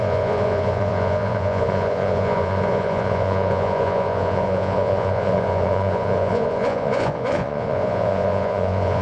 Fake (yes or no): yes